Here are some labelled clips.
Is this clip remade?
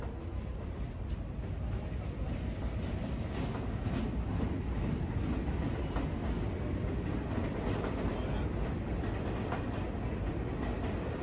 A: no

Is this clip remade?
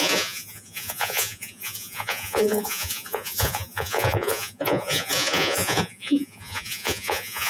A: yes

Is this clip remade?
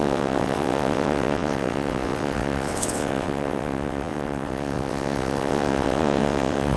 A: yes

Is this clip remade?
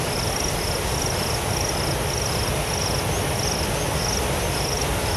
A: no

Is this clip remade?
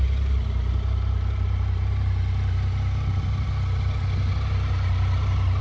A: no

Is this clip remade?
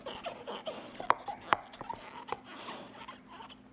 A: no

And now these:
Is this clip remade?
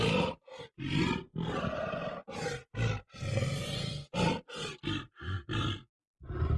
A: no